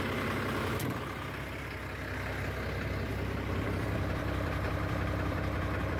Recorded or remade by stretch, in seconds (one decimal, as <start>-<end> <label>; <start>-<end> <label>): 0.0-3.1 recorded; 3.1-6.0 remade